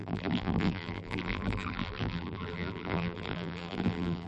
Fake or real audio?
fake